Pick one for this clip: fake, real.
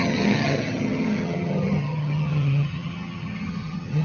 fake